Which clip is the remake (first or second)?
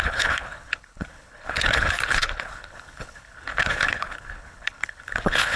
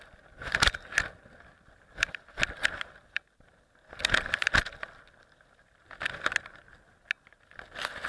first